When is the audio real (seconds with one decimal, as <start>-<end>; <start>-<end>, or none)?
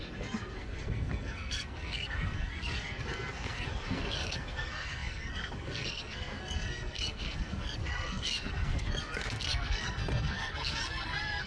none